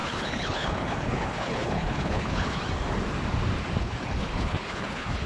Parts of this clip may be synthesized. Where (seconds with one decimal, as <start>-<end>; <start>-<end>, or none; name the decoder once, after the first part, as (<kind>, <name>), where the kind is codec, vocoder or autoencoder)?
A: 0.0-2.6 (codec, HILCodec); 3.8-5.3